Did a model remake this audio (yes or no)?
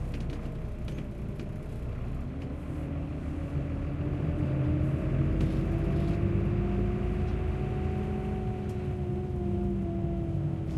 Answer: no